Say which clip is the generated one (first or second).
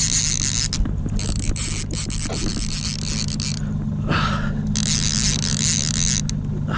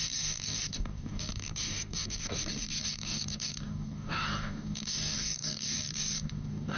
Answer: second